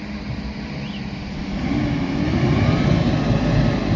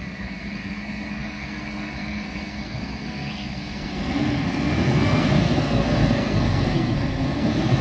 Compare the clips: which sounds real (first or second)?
first